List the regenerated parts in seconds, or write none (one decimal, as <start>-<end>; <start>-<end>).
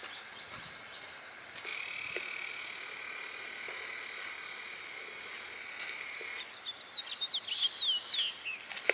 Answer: none